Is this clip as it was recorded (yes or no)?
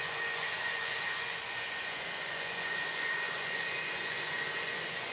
no